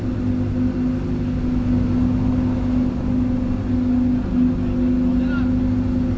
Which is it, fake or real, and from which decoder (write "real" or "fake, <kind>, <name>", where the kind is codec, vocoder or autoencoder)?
real